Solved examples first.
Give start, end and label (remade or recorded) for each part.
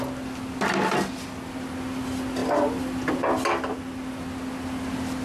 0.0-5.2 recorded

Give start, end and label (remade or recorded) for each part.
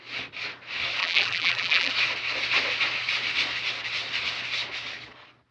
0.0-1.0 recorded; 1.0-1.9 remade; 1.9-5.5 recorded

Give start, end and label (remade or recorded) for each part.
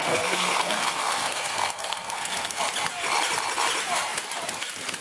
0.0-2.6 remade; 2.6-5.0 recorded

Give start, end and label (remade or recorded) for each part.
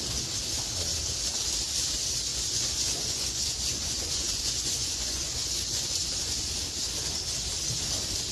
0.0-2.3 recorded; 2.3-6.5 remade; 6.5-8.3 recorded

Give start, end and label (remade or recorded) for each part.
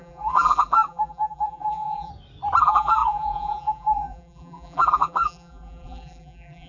0.0-2.1 remade; 2.1-2.6 recorded; 2.6-6.7 remade